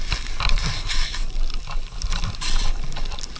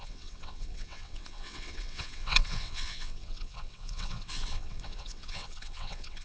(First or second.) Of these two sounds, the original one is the first